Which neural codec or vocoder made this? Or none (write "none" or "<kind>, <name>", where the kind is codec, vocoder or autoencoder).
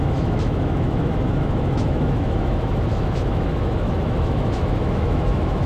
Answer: autoencoder, DAC-VAE